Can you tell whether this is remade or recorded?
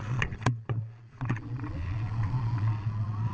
remade